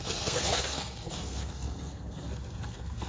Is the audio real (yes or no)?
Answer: no